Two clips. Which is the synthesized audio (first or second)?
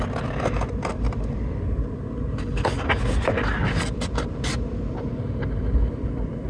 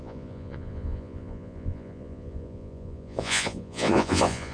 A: second